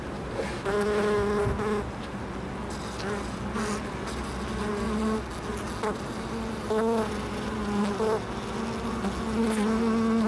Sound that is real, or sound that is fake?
real